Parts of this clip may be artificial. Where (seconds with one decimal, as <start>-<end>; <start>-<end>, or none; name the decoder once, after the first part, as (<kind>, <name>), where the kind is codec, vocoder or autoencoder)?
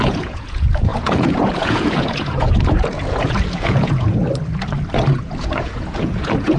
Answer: 0.0-4.2 (vocoder, Vocos); 5.1-6.6